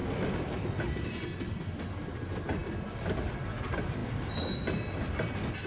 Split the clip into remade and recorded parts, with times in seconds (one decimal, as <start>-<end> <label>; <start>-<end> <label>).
0.0-5.7 recorded